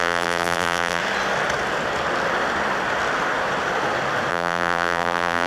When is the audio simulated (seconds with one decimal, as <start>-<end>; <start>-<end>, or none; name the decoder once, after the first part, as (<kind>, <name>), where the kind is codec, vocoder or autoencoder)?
0.0-1.0 (vocoder, BigVGAN v2); 4.3-5.5